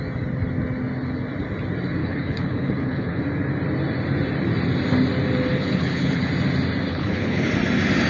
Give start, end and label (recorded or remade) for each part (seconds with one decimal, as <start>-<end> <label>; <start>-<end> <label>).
0.0-2.0 recorded; 2.0-3.2 remade; 3.2-5.5 recorded; 5.5-6.3 remade; 6.3-6.9 recorded; 6.9-7.5 remade; 7.5-8.1 recorded